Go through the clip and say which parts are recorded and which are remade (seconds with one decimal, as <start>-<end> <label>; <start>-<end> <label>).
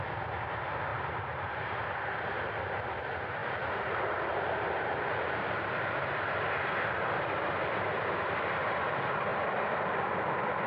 0.0-0.9 recorded; 0.9-1.7 remade; 1.7-3.4 recorded; 3.4-6.0 remade; 6.0-10.7 recorded